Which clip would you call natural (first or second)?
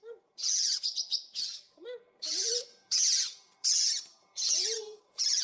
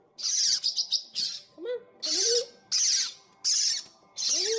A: second